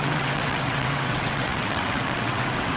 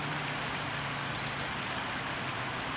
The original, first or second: second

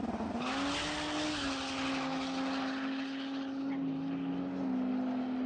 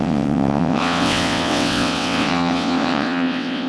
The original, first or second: first